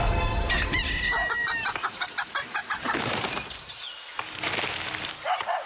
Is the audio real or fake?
real